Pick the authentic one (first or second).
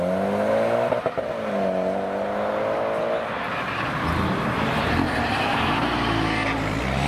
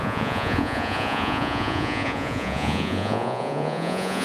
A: first